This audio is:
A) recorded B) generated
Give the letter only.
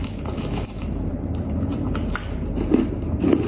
B